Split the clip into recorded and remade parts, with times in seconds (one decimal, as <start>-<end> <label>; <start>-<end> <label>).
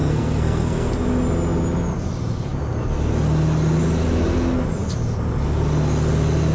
0.0-0.9 remade; 0.9-6.5 recorded